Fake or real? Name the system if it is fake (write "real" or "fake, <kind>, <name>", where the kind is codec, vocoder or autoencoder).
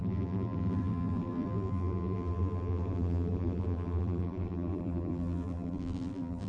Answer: fake, vocoder, BigVGAN v2